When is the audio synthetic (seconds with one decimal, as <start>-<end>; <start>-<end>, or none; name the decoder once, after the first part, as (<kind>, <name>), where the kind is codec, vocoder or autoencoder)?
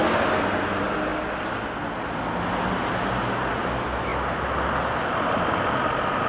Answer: none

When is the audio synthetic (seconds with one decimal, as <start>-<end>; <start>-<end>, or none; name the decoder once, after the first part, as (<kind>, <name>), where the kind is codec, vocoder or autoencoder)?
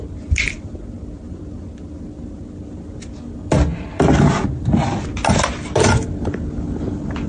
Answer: none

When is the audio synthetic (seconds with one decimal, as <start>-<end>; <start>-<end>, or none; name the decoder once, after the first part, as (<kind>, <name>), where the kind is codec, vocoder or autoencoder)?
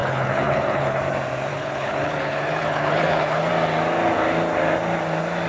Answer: 0.0-1.0 (codec, HILCodec); 1.5-3.5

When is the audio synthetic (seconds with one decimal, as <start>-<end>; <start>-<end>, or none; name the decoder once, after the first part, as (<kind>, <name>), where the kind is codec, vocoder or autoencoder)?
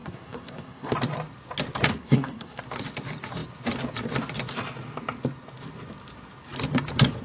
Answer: 0.0-0.9 (codec, SNAC); 1.9-2.6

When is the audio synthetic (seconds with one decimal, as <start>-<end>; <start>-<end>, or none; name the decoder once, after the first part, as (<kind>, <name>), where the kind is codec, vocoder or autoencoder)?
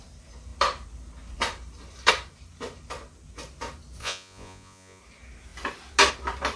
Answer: 4.0-5.0 (vocoder, Vocos)